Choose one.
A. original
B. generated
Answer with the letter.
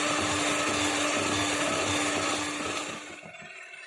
A